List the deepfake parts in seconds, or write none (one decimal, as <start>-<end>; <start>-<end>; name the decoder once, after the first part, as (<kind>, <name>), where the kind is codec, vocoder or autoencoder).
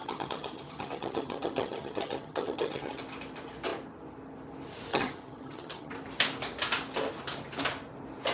0.0-3.0 (vocoder, HiFi-GAN); 4.9-5.9